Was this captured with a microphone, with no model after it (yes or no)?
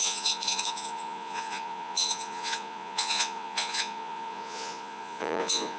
no